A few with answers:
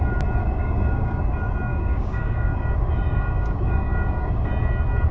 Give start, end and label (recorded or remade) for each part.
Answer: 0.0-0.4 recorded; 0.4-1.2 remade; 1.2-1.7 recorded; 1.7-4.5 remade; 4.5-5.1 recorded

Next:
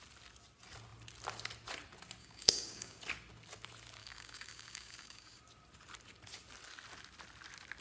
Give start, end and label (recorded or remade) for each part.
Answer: 0.0-2.2 recorded; 2.2-3.0 remade; 3.0-4.0 recorded; 4.0-5.4 remade; 5.4-7.8 recorded

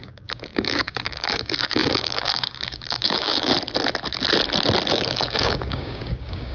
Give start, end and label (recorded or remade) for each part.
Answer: 0.0-3.5 remade; 3.5-4.9 recorded; 4.9-6.5 remade

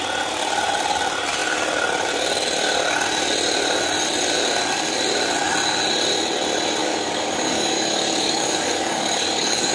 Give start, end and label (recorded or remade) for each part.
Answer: 0.0-6.8 recorded; 6.8-9.7 remade